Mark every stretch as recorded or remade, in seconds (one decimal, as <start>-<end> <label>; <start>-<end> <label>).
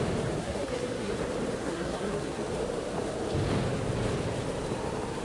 0.0-0.4 recorded; 0.4-1.1 remade; 1.1-1.6 recorded; 1.6-2.4 remade; 2.4-5.2 recorded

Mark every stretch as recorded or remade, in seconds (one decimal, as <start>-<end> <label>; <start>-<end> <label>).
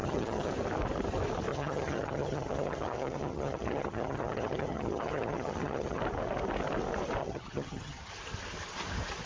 0.0-0.5 remade; 0.5-1.5 recorded; 1.5-6.0 remade; 6.0-7.2 recorded; 7.2-8.1 remade; 8.1-9.3 recorded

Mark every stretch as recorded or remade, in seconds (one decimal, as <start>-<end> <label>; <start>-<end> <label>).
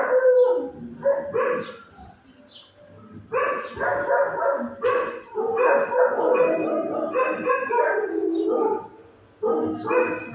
0.0-10.3 recorded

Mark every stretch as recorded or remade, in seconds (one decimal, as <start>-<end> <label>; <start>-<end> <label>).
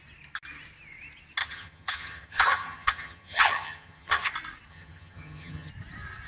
0.0-1.4 recorded; 1.4-4.3 remade; 4.3-4.7 recorded; 4.7-5.7 remade; 5.7-6.3 recorded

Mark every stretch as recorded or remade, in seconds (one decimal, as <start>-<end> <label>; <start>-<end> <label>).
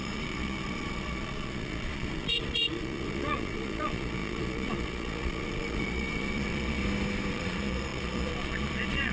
0.0-6.8 remade; 6.8-7.3 recorded; 7.3-9.1 remade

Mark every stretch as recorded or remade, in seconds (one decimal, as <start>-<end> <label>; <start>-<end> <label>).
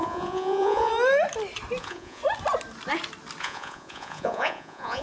0.0-0.9 remade; 0.9-1.8 recorded; 1.8-2.2 remade; 2.2-3.4 recorded; 3.4-5.0 remade